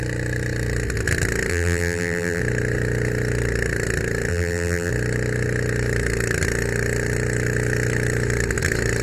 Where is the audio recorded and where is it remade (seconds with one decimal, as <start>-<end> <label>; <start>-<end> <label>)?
0.0-1.5 recorded; 1.5-2.4 remade; 2.4-4.3 recorded; 4.3-4.9 remade; 4.9-9.0 recorded